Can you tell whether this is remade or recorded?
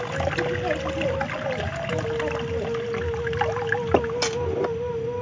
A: recorded